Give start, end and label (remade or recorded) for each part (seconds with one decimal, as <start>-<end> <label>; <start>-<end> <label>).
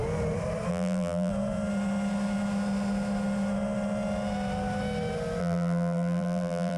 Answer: 0.0-0.7 recorded; 0.7-1.3 remade; 1.3-5.4 recorded; 5.4-6.8 remade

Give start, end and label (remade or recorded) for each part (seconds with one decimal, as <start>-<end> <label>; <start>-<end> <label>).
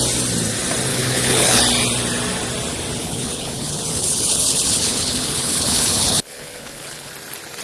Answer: 0.0-0.9 recorded; 0.9-1.6 remade; 1.6-3.0 recorded; 3.0-7.1 remade; 7.1-7.6 recorded